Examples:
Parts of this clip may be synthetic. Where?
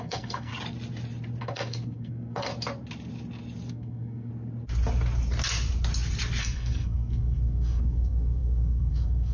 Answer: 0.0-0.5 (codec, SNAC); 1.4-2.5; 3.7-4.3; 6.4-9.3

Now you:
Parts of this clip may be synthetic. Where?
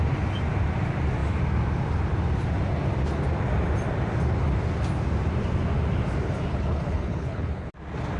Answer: 6.5-7.7 (codec, HILCodec)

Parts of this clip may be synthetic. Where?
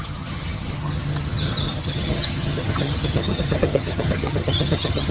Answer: 0.0-5.1 (vocoder, HiFi-GAN)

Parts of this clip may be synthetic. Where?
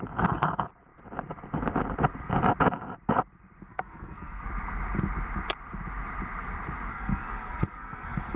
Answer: 3.7-4.5 (codec, SNAC); 6.9-8.4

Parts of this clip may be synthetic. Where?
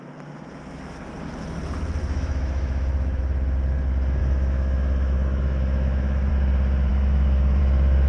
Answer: 2.0-3.2 (autoencoder, DAC-VAE); 4.2-6.3; 6.9-7.6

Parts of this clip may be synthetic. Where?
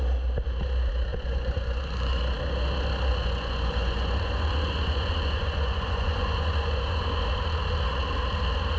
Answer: 1.1-2.2 (vocoder, Vocos); 3.1-7.0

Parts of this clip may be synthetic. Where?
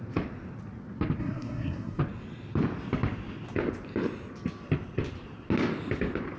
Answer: 1.2-2.0 (codec, SNAC)